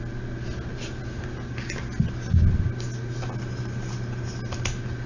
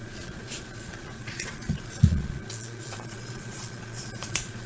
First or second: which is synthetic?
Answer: second